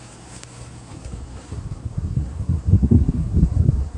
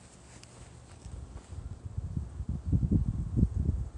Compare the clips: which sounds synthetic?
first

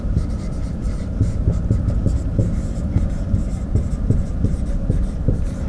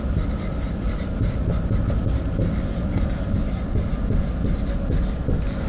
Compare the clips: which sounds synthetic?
first